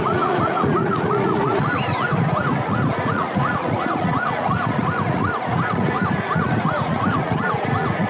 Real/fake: fake